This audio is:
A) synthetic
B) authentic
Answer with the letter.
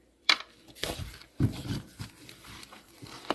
A